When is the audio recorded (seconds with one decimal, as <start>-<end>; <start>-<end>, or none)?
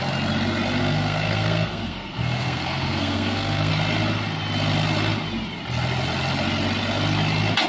0.0-0.8; 3.7-7.7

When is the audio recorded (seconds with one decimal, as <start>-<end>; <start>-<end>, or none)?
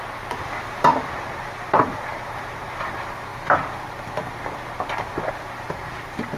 3.3-5.3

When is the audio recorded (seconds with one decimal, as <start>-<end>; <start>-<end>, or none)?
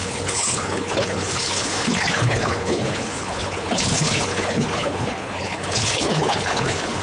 none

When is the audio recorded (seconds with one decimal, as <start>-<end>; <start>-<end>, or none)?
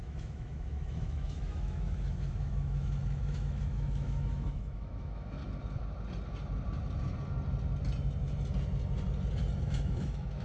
5.4-9.6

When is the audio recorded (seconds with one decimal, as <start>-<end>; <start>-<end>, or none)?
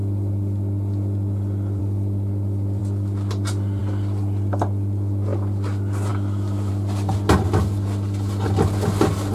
0.0-9.3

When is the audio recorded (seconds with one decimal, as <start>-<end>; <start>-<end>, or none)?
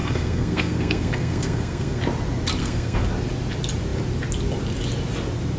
2.0-2.6; 3.1-5.6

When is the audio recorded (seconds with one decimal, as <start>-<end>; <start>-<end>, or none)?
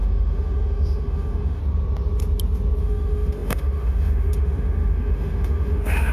1.6-2.8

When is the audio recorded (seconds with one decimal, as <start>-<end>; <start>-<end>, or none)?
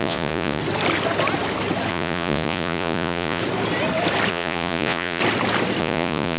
0.6-1.9; 3.4-4.3; 5.2-5.8